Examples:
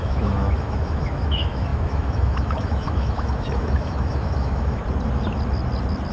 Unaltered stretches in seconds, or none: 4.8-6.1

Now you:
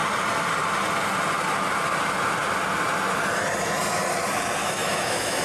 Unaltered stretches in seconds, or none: 0.0-4.6

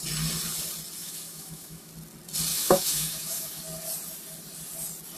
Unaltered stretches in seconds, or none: 0.0-1.0; 1.9-2.5; 3.6-5.2

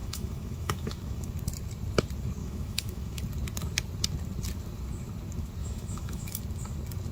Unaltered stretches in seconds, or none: 1.3-2.4; 3.2-5.6; 6.4-7.1

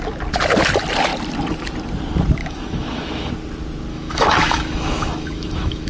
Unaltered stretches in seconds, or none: 0.0-2.4; 3.3-3.9

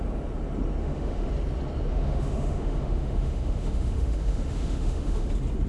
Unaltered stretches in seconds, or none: 0.0-0.8; 1.3-1.9; 5.3-5.7